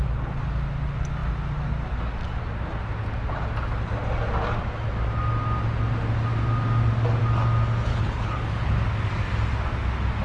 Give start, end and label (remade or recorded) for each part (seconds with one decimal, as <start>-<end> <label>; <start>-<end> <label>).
0.0-7.9 recorded; 7.9-8.7 remade; 8.7-10.2 recorded